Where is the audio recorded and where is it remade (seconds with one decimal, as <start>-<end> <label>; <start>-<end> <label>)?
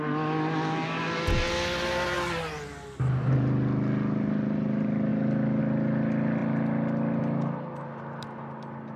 0.0-9.0 recorded